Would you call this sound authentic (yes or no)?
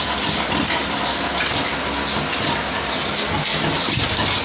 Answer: yes